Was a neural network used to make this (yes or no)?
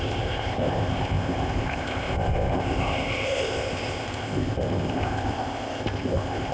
yes